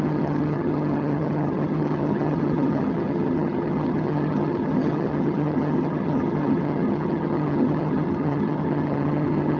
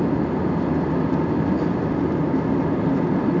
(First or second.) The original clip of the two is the second